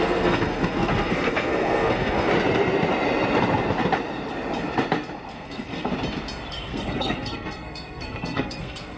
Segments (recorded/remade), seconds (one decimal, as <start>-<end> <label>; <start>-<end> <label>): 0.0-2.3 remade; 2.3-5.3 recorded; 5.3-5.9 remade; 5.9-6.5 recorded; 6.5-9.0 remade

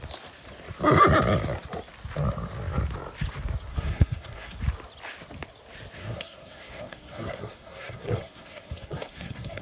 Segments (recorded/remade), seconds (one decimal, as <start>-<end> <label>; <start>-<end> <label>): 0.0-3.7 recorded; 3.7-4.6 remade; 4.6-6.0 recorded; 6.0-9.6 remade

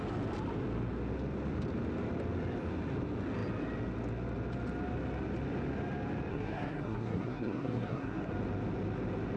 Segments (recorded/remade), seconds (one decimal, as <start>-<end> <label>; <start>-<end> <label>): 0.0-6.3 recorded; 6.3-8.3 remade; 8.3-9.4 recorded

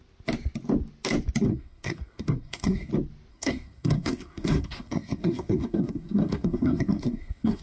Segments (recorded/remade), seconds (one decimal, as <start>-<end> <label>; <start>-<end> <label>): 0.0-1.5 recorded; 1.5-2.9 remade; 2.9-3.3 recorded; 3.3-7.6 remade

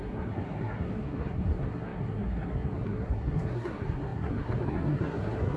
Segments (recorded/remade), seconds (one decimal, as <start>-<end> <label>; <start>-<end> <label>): 0.0-5.6 remade